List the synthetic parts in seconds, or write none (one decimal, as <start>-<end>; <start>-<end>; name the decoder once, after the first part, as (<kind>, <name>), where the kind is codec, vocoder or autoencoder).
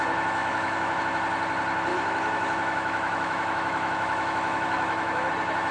0.4-1.0 (autoencoder, DAC-VAE); 1.9-5.3